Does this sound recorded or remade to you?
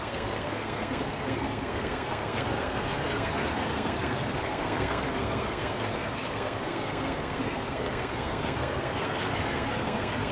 remade